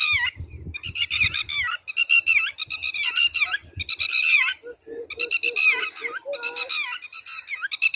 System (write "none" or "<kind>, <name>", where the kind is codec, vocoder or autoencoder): none